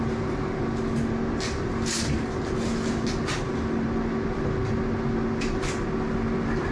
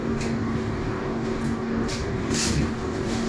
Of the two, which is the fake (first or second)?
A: second